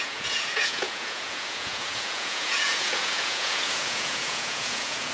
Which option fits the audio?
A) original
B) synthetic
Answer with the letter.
B